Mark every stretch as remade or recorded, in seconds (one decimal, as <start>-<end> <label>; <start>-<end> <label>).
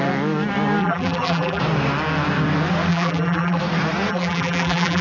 0.0-0.8 recorded; 0.8-1.6 remade; 1.6-2.9 recorded; 2.9-3.6 remade; 3.6-4.1 recorded; 4.1-5.0 remade